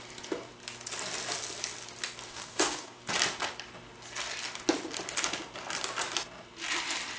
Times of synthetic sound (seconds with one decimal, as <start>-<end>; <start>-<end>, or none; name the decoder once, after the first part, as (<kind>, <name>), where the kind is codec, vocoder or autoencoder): 2.3-3.0 (codec, DAC)

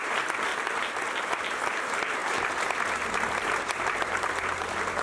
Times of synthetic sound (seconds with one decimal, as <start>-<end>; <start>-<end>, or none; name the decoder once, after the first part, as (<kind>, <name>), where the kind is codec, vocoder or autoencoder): 0.0-0.5 (vocoder, BigVGAN v2); 1.2-5.0

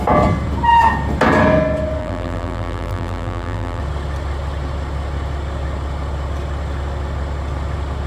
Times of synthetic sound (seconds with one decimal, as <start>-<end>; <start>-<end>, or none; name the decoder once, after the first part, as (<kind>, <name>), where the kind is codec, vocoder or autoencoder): 2.0-3.8 (vocoder, BigVGAN v2)

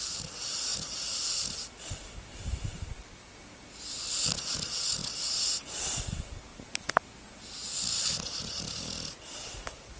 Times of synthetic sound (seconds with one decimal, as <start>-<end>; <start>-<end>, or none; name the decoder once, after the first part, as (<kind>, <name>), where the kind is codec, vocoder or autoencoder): none

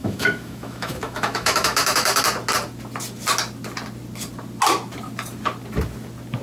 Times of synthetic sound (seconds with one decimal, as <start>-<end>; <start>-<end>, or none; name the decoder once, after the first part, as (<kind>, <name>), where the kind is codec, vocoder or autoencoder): 0.0-2.2 (autoencoder, DAC-VAE)

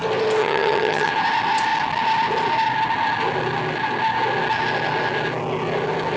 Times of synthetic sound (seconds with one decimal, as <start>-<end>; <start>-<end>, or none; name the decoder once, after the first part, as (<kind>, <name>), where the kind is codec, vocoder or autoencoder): 0.4-1.1 (vocoder, HiFi-GAN)